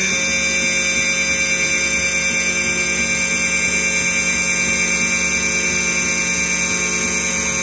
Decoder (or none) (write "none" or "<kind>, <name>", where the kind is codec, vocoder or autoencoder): none